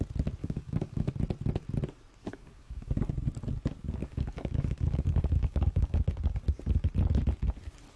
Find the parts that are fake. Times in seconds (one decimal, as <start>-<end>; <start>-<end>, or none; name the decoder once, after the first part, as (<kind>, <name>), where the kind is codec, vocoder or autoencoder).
0.4-1.1 (codec, DAC); 2.2-3.1; 4.0-6.0